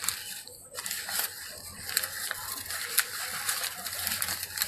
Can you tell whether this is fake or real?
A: real